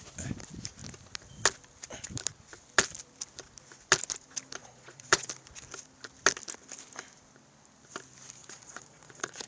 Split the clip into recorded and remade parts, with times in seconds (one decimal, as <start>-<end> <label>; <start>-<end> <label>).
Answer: 0.0-4.6 recorded; 4.6-5.3 remade; 5.3-8.4 recorded; 8.4-9.5 remade